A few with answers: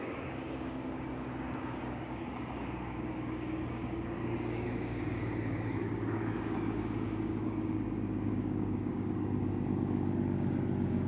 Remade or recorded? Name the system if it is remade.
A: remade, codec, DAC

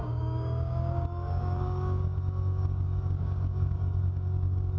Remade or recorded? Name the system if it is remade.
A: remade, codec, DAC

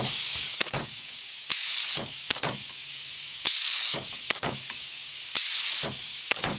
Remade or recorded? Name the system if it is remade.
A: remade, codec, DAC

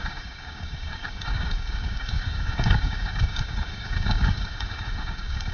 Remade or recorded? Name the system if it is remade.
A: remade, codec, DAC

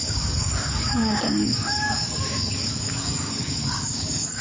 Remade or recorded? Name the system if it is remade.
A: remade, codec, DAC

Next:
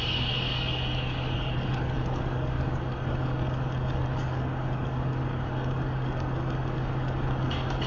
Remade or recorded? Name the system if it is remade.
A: remade, codec, DAC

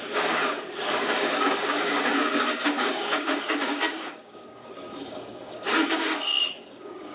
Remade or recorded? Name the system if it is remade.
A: remade, codec, DAC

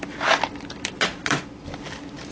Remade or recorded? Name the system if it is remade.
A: recorded